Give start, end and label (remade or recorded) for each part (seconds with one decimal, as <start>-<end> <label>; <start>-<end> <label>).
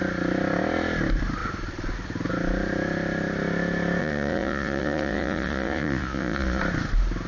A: 0.0-4.0 recorded; 4.0-6.6 remade; 6.6-7.3 recorded